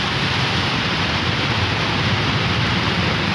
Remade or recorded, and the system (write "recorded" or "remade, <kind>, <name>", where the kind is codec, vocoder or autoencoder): recorded